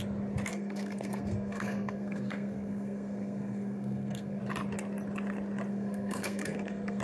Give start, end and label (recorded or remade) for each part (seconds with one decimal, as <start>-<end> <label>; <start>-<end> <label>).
0.0-0.5 recorded; 0.5-4.4 remade; 4.4-5.7 recorded; 5.7-7.0 remade